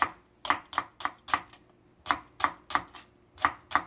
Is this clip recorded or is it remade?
recorded